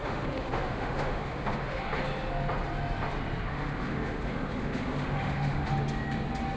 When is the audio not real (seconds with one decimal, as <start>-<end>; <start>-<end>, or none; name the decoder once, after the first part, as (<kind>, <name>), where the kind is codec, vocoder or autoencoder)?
0.0-1.8 (autoencoder, DAC-VAE); 3.5-5.7